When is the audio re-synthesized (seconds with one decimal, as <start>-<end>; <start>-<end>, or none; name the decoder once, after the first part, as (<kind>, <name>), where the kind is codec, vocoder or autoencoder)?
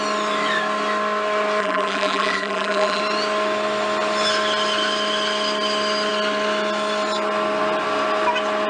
1.6-3.0 (vocoder, BigVGAN v2)